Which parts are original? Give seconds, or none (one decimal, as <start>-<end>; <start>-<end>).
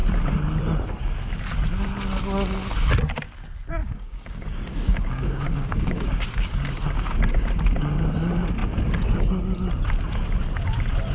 0.0-3.8; 6.7-11.1